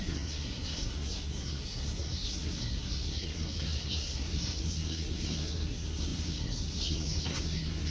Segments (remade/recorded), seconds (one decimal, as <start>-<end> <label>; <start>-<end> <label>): 0.0-7.9 remade